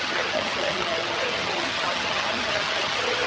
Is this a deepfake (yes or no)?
yes